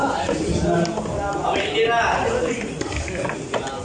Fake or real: real